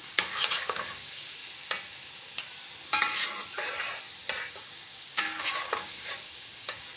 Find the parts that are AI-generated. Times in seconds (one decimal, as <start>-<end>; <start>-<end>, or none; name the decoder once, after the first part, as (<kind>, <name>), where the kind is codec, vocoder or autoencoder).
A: 0.0-1.4 (codec, DAC); 4.5-7.0